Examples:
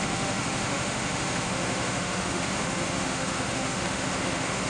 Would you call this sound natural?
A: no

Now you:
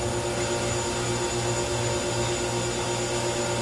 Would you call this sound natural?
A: yes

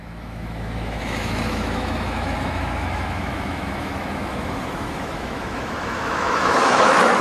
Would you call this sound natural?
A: no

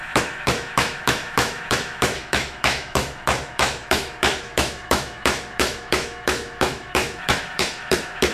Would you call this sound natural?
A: no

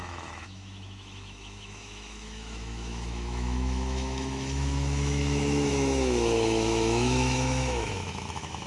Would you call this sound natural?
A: no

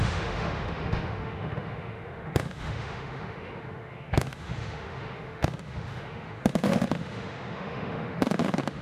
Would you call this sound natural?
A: no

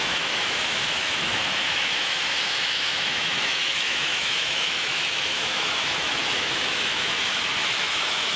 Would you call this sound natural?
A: no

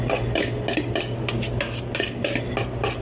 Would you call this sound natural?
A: yes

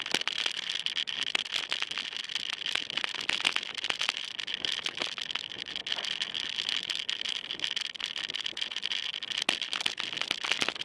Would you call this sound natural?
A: yes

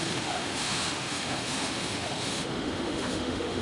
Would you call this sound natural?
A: no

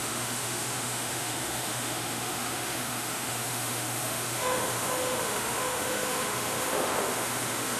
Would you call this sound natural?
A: no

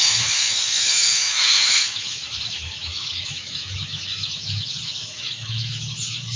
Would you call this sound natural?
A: no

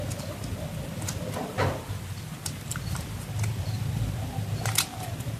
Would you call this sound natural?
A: yes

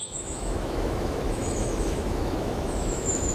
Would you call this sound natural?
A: no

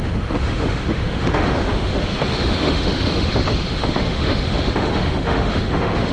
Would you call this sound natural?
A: no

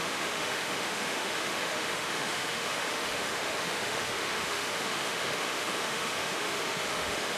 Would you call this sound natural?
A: no